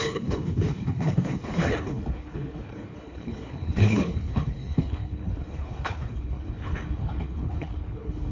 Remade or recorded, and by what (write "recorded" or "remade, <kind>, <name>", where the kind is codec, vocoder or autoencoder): remade, codec, HILCodec